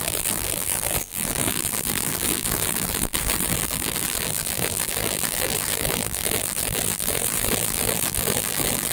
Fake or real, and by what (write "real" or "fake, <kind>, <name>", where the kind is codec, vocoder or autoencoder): fake, vocoder, BigVGAN v2